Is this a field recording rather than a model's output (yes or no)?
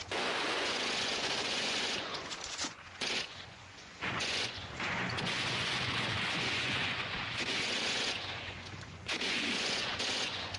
no